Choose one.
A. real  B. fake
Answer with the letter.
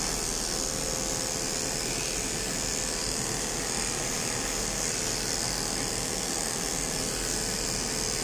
A